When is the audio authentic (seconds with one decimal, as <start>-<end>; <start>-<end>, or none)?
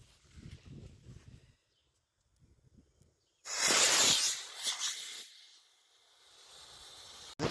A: 0.0-7.5